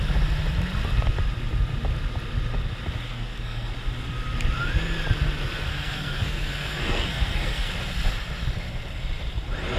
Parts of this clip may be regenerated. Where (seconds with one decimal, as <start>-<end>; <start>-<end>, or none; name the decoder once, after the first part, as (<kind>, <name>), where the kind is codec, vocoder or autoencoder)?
3.1-3.7 (codec, SNAC); 5.7-7.7